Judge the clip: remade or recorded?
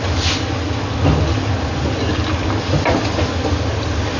recorded